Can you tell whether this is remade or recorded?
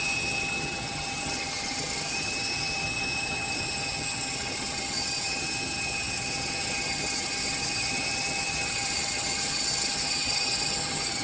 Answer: remade